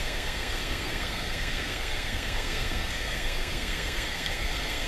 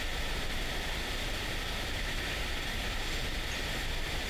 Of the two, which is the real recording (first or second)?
second